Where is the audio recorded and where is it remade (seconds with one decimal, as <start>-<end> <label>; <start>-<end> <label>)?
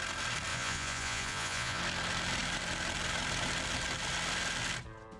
0.0-0.5 recorded; 0.5-1.8 remade; 1.8-5.2 recorded